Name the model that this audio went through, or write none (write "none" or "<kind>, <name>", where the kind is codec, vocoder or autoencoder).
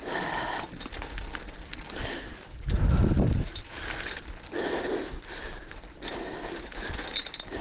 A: none